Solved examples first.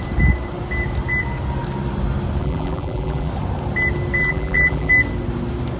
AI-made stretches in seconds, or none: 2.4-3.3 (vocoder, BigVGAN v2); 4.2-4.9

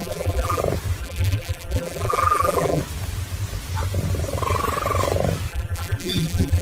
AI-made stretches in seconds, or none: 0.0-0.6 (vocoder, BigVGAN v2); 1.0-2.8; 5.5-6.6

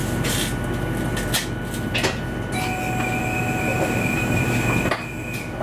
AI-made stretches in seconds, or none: 3.7-4.4 (vocoder, BigVGAN v2)